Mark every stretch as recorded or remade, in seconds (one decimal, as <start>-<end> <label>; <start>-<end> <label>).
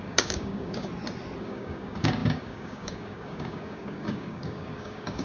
0.0-0.9 remade; 0.9-1.4 recorded; 1.4-5.2 remade